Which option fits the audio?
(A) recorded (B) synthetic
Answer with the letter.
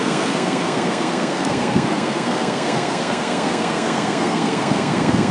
B